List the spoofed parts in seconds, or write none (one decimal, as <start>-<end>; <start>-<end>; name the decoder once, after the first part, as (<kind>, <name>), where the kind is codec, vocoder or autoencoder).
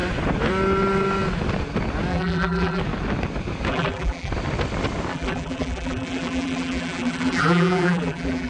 2.1-2.8 (vocoder, BigVGAN v2); 3.7-4.3; 5.1-8.5